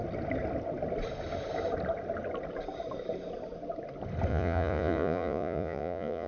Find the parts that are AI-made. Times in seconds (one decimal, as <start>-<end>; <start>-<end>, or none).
4.3-6.3